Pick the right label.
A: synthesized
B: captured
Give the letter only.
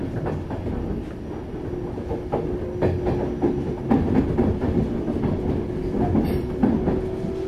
B